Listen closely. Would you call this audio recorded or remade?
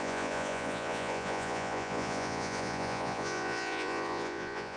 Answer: remade